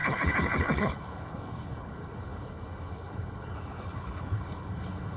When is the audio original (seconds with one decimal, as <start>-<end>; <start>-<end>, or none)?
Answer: none